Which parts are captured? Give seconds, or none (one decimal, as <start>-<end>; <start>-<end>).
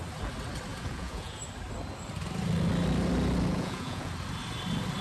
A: 0.0-0.7; 1.4-3.5; 4.1-5.0